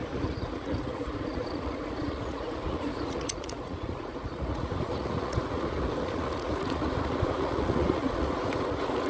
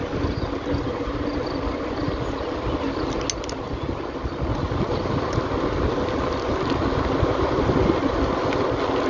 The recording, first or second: second